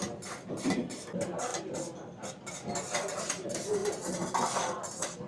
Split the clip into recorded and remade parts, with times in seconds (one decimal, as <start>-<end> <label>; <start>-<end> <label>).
0.0-5.3 recorded